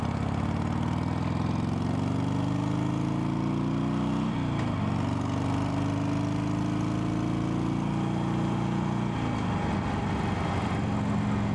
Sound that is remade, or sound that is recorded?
recorded